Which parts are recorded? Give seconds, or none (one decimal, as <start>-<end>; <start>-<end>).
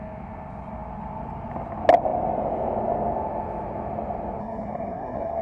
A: 0.0-4.4